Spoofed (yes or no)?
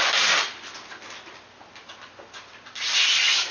yes